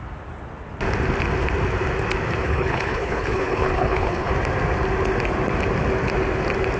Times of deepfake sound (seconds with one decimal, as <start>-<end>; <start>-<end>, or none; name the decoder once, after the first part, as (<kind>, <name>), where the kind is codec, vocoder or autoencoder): 2.4-4.3 (codec, HILCodec)